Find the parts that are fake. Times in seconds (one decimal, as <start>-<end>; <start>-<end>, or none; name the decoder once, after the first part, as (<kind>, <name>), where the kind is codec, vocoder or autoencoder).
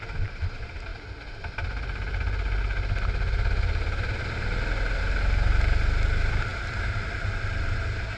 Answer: 6.5-7.2 (vocoder, BigVGAN v2)